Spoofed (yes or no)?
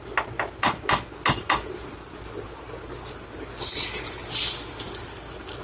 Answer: no